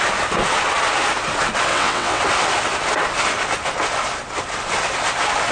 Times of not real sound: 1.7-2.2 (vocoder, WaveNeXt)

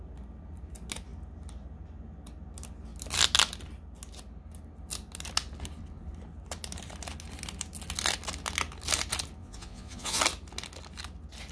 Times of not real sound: 9.4-10.2 (vocoder, Vocos)

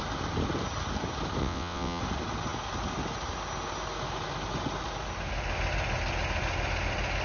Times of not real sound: 1.4-2.0 (vocoder, WaveNeXt)

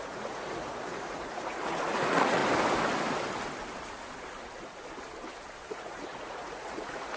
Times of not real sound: 0.0-2.4 (vocoder, Vocos); 5.7-7.2

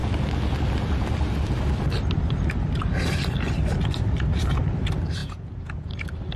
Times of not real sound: 5.2-5.9 (vocoder, Vocos)

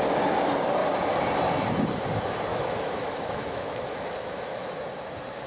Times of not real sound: 2.5-4.7 (autoencoder, DAC-VAE)